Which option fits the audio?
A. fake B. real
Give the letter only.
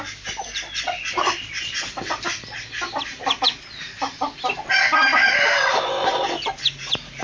B